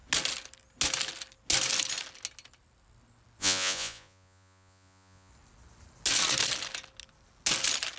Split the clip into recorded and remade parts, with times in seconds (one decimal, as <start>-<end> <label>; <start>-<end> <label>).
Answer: 0.0-3.4 recorded; 3.4-5.3 remade; 5.3-8.0 recorded